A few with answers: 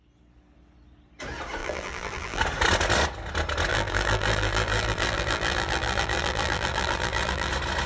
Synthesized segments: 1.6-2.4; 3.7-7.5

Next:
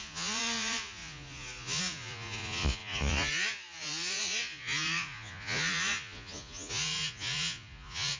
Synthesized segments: 0.0-8.2

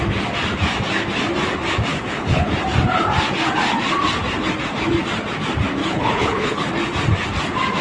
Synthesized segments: 1.9-2.5; 5.8-6.7

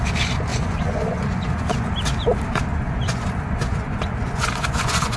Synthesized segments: 0.5-1.9; 2.7-5.2

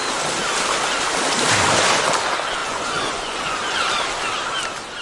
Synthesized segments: 2.6-3.9

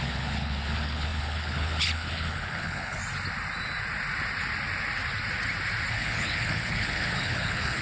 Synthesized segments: 0.0-3.0; 5.9-7.8